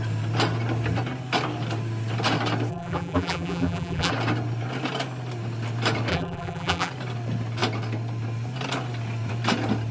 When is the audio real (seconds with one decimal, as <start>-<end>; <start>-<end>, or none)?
0.0-2.7; 4.1-6.1; 6.9-9.9